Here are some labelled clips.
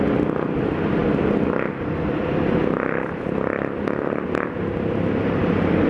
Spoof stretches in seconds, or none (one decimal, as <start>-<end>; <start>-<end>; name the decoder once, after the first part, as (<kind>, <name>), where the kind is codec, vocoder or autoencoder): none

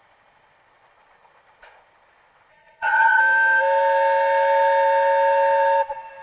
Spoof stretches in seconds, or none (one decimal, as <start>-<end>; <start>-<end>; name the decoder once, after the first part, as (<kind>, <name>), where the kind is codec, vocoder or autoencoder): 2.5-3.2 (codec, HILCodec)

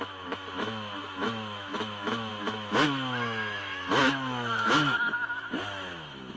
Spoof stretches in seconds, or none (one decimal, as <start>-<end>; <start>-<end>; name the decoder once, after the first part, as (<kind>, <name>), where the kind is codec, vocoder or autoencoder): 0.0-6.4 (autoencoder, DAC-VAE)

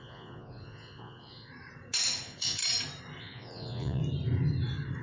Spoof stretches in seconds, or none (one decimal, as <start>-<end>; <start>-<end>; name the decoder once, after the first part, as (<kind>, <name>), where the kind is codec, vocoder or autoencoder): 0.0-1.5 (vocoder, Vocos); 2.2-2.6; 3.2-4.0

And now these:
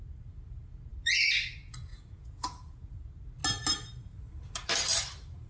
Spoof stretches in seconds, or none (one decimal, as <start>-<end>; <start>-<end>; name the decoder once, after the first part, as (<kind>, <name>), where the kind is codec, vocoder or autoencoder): 1.9-2.9 (vocoder, Vocos)